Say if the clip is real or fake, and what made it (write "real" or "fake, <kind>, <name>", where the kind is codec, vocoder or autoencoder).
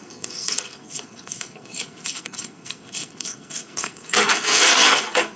fake, codec, SNAC